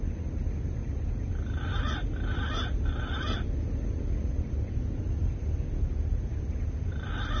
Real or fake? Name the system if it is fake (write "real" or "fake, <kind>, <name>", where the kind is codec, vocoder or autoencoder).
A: real